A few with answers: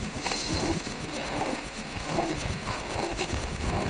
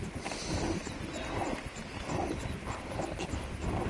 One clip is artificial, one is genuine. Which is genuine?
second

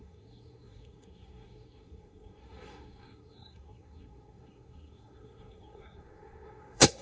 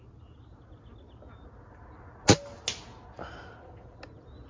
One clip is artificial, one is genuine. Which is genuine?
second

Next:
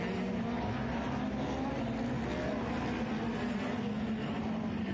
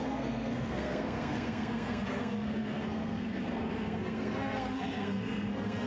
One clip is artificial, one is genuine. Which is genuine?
first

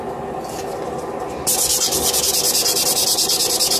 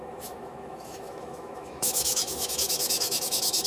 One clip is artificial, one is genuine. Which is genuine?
first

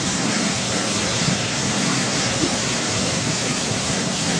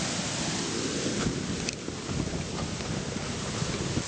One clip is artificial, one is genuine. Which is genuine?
second